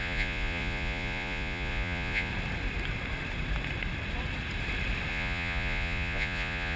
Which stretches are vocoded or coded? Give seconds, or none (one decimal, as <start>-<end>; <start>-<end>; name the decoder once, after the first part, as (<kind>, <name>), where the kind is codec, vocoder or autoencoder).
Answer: 0.0-2.3 (vocoder, Vocos); 5.1-6.8

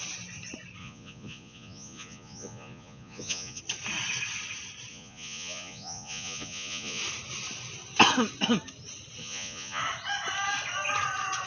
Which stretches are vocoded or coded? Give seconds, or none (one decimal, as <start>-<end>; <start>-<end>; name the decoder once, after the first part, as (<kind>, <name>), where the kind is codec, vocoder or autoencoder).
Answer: 0.8-3.6 (vocoder, Vocos); 4.9-7.0; 9.2-9.8

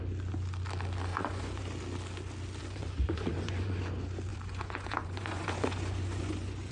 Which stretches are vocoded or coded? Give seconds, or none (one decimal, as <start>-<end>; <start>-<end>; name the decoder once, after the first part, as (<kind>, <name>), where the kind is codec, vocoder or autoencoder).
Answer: 1.1-1.6 (vocoder, Vocos); 2.6-3.8; 4.3-6.7

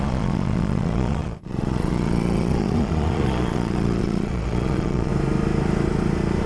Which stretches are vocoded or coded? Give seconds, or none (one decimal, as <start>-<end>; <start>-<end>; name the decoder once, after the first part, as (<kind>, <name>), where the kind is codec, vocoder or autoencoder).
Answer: 0.0-5.1 (vocoder, Vocos)

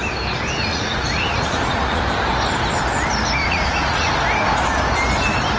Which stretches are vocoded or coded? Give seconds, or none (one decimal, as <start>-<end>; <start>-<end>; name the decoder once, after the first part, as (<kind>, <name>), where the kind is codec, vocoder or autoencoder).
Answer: 0.7-2.0 (vocoder, Vocos); 3.4-4.1

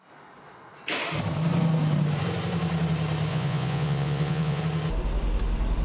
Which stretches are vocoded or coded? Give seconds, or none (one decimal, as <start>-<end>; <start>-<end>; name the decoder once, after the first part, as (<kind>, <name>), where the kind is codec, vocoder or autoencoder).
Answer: 3.3-4.6 (vocoder, Vocos)